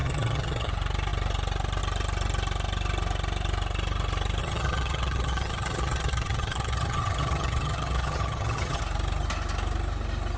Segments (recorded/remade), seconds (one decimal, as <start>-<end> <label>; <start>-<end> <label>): 0.0-0.7 remade; 0.7-4.4 recorded; 4.4-8.8 remade; 8.8-10.4 recorded